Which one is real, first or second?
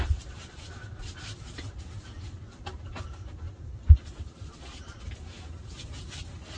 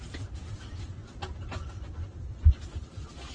second